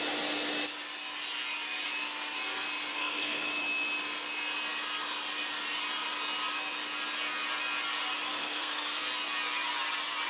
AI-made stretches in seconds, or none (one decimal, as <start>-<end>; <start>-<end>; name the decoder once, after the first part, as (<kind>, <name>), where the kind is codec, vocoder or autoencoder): 2.9-3.5 (codec, SNAC); 8.4-9.0

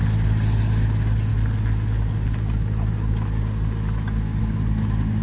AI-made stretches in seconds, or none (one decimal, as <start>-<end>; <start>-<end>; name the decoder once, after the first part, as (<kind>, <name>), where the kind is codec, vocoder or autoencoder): none